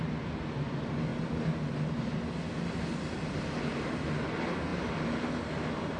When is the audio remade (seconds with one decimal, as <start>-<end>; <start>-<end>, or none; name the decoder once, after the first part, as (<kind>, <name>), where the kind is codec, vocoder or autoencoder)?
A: none